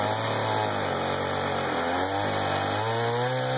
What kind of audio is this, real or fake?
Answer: real